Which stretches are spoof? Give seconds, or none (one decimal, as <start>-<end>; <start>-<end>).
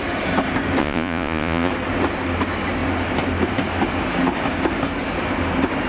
0.8-1.7